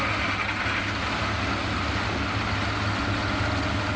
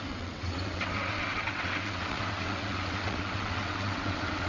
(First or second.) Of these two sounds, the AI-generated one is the second